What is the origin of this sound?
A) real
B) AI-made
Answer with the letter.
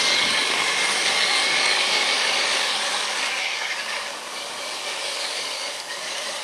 B